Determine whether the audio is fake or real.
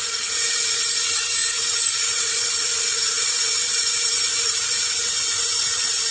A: fake